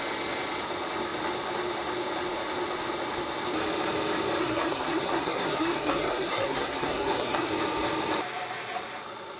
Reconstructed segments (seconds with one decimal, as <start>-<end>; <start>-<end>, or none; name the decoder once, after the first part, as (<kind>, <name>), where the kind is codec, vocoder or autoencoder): 4.4-7.5 (codec, SNAC)